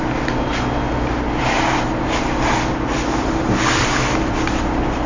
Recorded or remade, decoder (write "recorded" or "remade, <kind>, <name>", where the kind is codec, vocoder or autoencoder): recorded